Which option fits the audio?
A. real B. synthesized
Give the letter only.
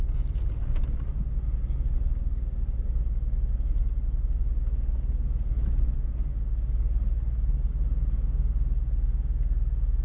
A